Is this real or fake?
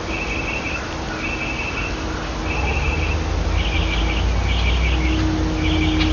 real